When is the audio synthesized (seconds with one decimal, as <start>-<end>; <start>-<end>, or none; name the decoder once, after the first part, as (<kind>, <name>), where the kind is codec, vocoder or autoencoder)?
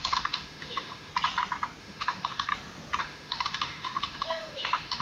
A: 0.0-1.1 (autoencoder, DAC-VAE); 1.8-2.5; 3.0-5.0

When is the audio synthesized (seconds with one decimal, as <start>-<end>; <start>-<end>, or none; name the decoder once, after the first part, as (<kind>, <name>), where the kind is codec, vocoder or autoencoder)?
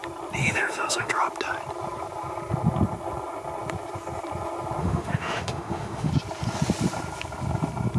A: 0.4-1.1 (autoencoder, DAC-VAE); 4.8-6.1